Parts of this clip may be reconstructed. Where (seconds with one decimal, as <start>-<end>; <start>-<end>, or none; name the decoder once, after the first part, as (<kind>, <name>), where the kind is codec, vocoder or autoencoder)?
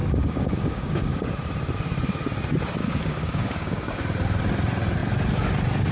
0.0-1.3 (codec, DAC); 2.8-4.0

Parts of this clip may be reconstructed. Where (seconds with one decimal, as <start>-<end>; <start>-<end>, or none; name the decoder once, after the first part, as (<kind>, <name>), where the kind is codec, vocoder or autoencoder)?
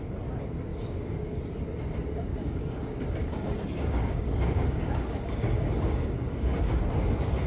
0.7-1.4 (codec, DAC); 2.3-6.8